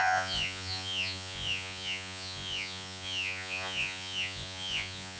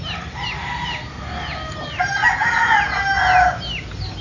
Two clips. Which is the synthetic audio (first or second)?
first